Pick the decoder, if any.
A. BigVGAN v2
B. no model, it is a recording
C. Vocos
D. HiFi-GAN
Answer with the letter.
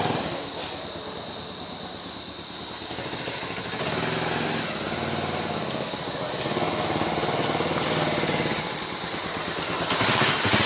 B